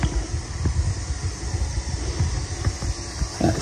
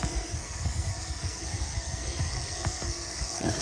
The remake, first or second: second